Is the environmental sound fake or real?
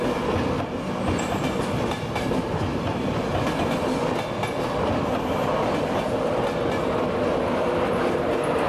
real